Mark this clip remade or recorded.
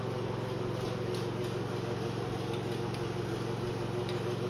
recorded